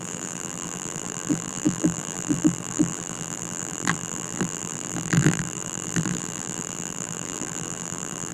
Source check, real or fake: fake